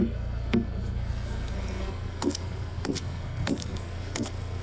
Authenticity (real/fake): fake